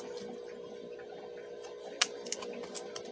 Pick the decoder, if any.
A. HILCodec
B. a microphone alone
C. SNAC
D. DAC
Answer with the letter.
B